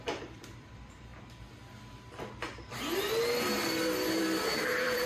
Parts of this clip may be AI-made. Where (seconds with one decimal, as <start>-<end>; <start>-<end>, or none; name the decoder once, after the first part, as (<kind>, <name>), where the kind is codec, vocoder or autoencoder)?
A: 0.0-1.1 (vocoder, BigVGAN v2); 4.2-5.1